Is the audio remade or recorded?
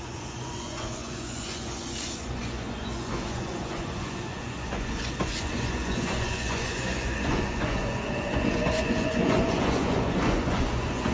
remade